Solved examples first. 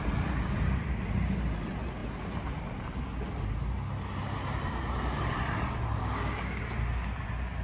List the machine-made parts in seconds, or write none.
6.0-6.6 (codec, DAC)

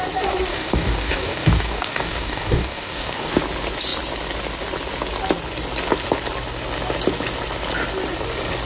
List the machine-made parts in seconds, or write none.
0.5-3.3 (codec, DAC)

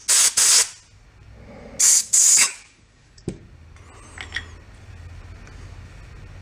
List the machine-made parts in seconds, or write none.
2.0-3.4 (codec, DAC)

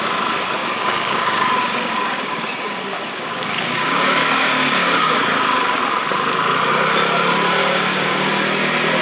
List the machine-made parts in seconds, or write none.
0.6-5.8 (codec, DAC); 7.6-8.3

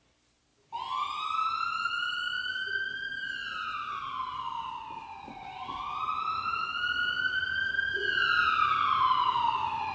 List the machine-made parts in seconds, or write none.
none

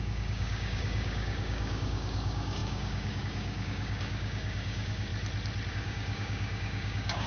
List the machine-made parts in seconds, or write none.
0.0-5.1 (codec, DAC); 5.7-7.3